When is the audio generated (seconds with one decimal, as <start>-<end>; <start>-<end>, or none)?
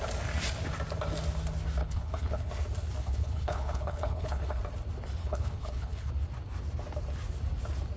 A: 1.8-2.5; 3.0-4.6; 5.2-6.1